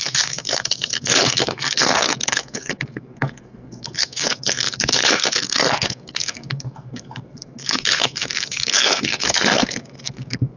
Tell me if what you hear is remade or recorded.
remade